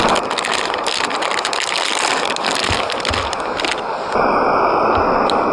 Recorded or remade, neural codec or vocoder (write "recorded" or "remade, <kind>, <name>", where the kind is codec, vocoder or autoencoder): recorded